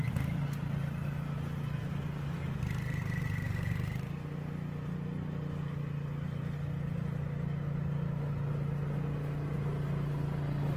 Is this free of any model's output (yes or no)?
yes